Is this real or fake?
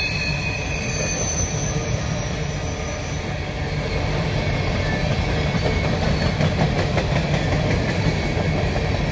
real